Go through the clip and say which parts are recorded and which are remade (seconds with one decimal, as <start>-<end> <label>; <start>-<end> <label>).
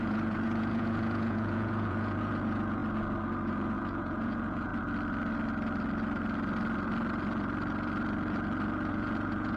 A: 0.0-2.8 remade; 2.8-3.5 recorded; 3.5-4.7 remade; 4.7-8.9 recorded; 8.9-9.6 remade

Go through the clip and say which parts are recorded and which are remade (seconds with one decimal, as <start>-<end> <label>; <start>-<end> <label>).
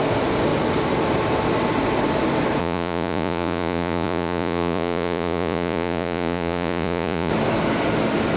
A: 0.0-2.6 recorded; 2.6-7.3 remade; 7.3-8.4 recorded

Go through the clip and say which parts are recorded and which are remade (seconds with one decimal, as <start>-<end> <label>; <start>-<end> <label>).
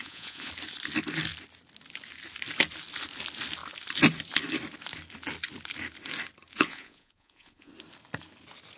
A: 0.0-0.5 remade; 0.5-6.5 recorded; 6.5-7.7 remade; 7.7-8.8 recorded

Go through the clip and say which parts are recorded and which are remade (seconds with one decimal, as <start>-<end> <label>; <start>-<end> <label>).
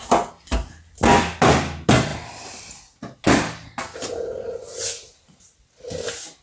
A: 0.0-6.4 recorded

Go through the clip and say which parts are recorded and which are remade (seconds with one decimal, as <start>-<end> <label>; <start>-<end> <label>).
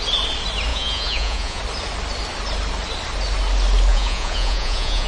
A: 0.0-0.7 recorded; 0.7-1.6 remade; 1.6-3.9 recorded; 3.9-5.1 remade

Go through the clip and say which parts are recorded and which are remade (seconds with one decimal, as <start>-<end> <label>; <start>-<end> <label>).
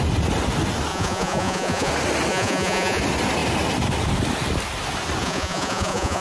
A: 0.0-0.9 recorded; 0.9-1.9 remade; 1.9-2.3 recorded; 2.3-3.0 remade; 3.0-5.2 recorded; 5.2-6.2 remade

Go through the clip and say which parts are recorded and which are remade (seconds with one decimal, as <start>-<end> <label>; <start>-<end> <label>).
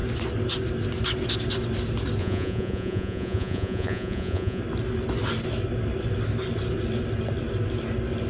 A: 0.0-2.2 recorded; 2.2-4.6 remade; 4.6-8.3 recorded